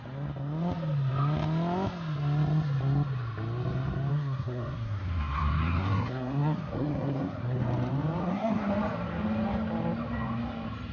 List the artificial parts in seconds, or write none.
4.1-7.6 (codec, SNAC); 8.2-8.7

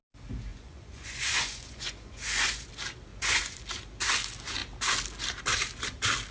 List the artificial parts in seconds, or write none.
0.5-2.7 (vocoder, Vocos); 3.1-3.6

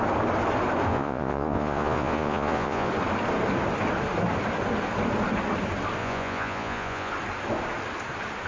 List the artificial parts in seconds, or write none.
0.9-2.9 (vocoder, Vocos); 6.0-7.1

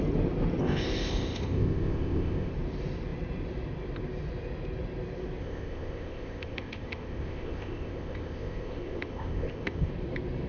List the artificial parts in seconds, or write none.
0.6-2.5 (codec, ZipCodec); 5.4-9.9

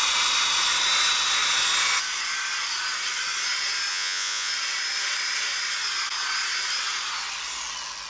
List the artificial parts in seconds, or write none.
3.9-4.5 (vocoder, Vocos)

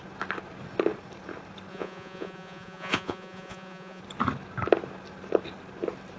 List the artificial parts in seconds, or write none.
1.7-4.0 (vocoder, Vocos)

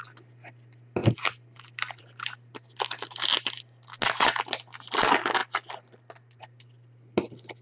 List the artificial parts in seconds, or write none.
none